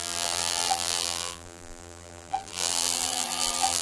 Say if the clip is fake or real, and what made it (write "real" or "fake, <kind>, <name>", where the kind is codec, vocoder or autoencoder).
fake, vocoder, BigVGAN v2